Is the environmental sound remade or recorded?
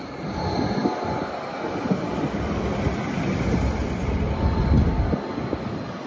recorded